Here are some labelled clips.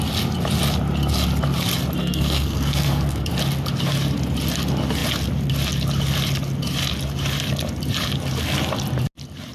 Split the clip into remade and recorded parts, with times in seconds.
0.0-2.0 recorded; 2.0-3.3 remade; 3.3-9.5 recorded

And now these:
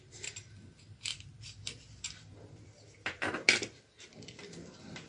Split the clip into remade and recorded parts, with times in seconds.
0.0-5.1 recorded

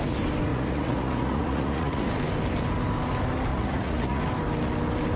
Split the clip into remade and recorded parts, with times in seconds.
0.0-0.5 recorded; 0.5-2.1 remade; 2.1-3.5 recorded; 3.5-4.2 remade; 4.2-5.2 recorded

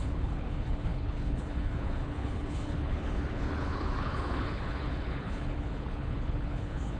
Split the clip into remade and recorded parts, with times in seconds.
0.0-7.0 remade

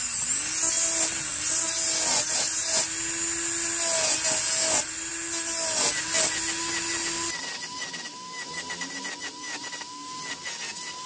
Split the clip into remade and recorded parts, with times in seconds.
0.0-11.1 recorded

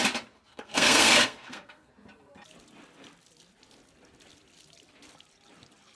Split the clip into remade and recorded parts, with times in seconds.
0.0-0.5 recorded; 0.5-1.9 remade; 1.9-6.0 recorded